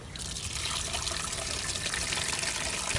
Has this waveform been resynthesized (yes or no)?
no